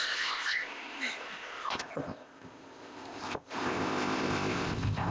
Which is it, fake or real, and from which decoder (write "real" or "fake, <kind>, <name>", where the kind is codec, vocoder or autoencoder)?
fake, codec, ZipCodec